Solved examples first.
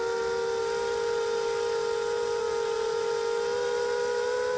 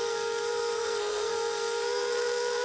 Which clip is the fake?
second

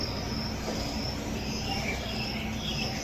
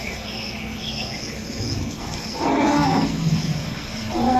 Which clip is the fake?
second